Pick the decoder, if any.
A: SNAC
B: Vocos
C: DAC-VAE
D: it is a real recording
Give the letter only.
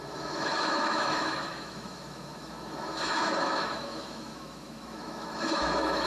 C